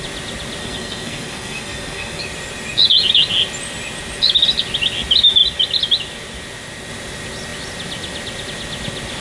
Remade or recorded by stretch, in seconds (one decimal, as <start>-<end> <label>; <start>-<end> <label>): 0.0-0.6 recorded; 0.6-2.2 remade; 2.2-9.2 recorded